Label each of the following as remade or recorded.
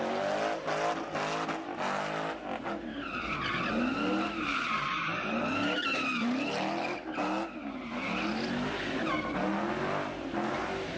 recorded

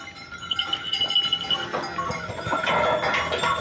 recorded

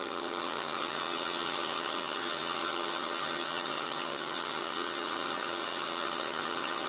remade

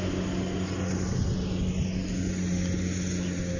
recorded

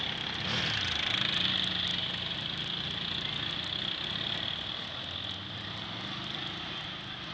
recorded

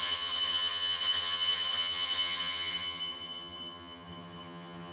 remade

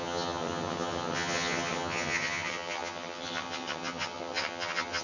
remade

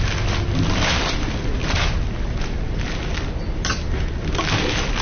recorded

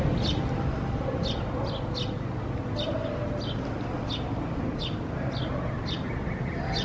recorded